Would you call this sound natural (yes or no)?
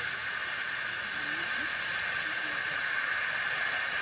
yes